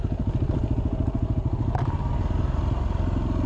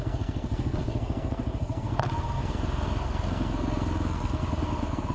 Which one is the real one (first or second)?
first